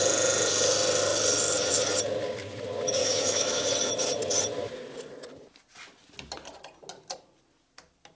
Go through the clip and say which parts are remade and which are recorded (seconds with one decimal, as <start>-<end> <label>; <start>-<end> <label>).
0.0-3.0 recorded; 3.0-3.7 remade; 3.7-8.2 recorded